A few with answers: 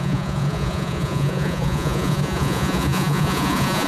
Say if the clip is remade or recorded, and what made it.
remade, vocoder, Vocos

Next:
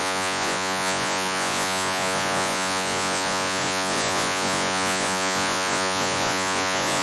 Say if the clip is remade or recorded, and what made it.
remade, vocoder, Vocos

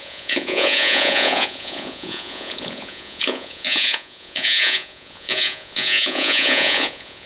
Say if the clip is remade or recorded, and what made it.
remade, vocoder, Vocos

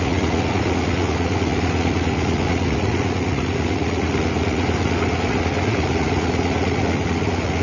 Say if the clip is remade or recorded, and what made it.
remade, vocoder, Vocos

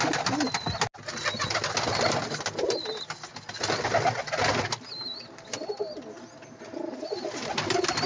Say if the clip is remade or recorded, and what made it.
recorded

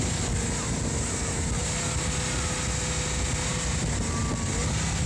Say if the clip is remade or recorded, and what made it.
recorded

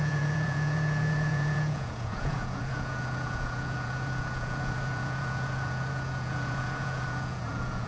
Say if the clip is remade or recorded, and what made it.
remade, vocoder, Vocos